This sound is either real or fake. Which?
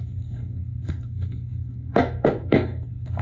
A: fake